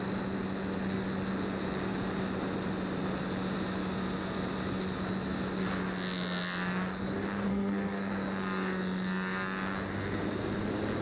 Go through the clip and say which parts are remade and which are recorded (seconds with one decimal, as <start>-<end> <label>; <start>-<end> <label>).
0.0-7.5 recorded; 7.5-8.1 remade; 8.1-11.0 recorded